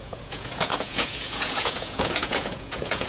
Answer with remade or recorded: remade